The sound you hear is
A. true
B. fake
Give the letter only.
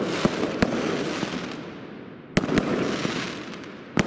A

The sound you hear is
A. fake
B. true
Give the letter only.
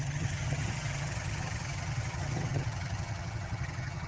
A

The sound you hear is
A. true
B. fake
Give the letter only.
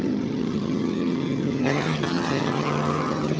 B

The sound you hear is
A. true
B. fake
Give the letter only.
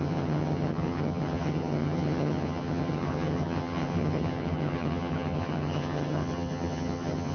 B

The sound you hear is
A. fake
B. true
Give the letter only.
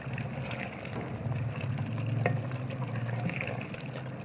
B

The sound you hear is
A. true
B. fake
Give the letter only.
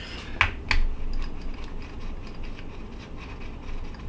A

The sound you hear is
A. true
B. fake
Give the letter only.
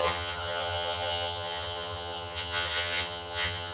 B